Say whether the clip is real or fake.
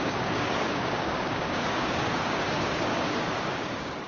fake